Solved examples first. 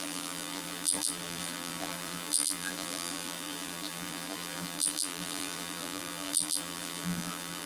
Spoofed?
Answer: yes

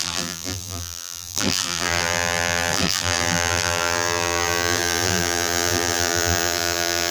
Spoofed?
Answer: yes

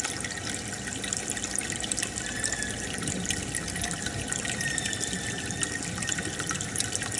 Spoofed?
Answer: no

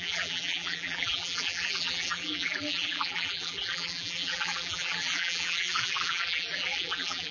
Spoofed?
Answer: yes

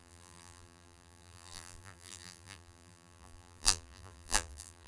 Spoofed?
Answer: yes